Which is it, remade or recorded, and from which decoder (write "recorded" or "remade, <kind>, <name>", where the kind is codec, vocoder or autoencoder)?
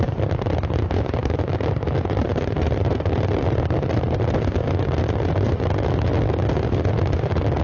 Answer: recorded